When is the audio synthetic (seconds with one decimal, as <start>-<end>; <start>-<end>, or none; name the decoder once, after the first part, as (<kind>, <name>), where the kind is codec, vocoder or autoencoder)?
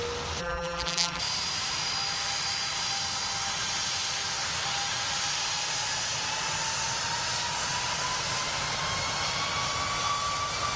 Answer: 0.4-1.2 (vocoder, BigVGAN v2)